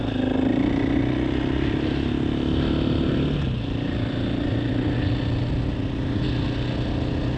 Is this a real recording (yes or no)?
yes